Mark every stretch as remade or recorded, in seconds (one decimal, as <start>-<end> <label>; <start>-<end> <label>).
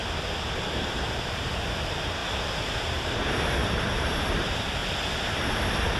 0.0-0.7 recorded; 0.7-2.2 remade; 2.2-2.8 recorded; 2.8-4.8 remade; 4.8-5.5 recorded; 5.5-6.0 remade